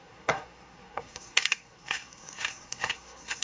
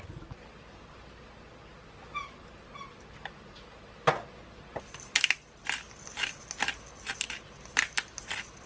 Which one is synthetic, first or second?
first